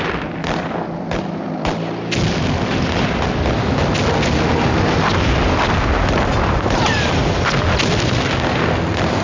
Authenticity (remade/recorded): recorded